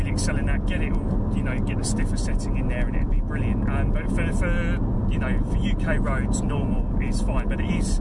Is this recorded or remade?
recorded